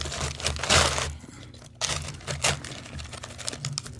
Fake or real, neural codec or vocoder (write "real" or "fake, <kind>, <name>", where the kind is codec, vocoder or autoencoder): real